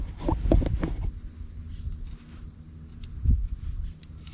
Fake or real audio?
real